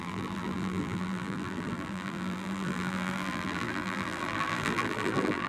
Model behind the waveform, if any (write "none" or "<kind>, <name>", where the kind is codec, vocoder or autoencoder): vocoder, BigVGAN v2